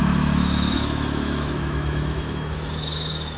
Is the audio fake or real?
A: fake